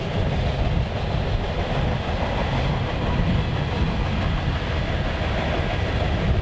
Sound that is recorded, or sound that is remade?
recorded